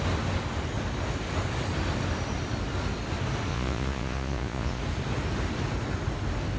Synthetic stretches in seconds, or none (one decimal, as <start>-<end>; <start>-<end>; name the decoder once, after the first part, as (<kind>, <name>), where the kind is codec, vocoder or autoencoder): 3.5-4.8 (vocoder, Vocos)